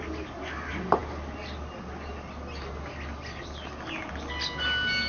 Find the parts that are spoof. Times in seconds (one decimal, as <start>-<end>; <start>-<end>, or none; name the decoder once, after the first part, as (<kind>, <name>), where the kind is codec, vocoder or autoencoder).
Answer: none